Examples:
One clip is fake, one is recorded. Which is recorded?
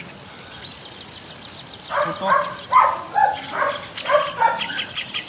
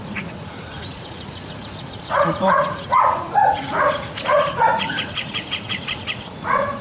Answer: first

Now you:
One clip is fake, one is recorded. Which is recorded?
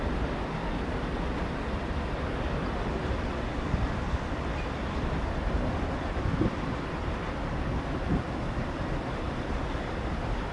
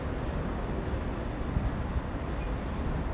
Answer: second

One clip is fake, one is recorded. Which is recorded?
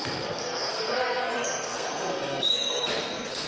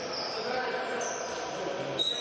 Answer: second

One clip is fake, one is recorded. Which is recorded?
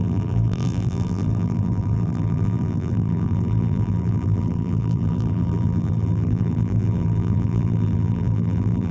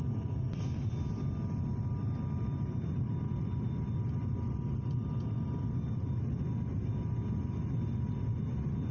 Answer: second